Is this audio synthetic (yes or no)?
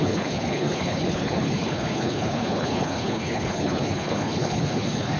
yes